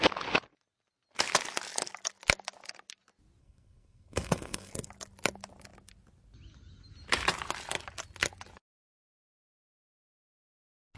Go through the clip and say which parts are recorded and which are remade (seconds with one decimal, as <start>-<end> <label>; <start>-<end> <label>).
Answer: 0.0-3.4 recorded; 3.4-4.9 remade; 4.9-11.0 recorded